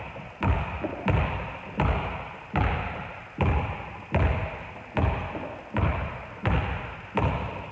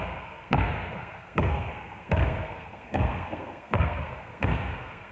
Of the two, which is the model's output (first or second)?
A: second